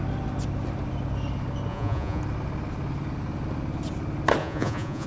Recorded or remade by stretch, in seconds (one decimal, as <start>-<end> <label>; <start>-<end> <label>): 0.0-1.7 recorded; 1.7-2.2 remade; 2.2-4.4 recorded; 4.4-5.1 remade